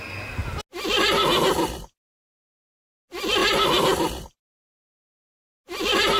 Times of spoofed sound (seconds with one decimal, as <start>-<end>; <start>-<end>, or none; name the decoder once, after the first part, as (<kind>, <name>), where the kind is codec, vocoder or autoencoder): 3.4-4.9 (vocoder, BigVGAN v2)